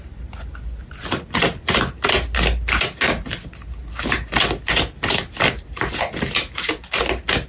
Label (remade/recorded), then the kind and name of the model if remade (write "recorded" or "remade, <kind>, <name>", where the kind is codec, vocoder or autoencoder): recorded